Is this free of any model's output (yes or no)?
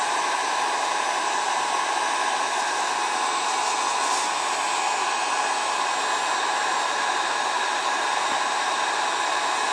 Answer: yes